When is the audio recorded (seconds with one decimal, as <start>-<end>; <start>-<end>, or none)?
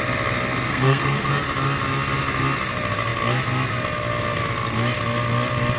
0.0-0.7; 1.3-5.8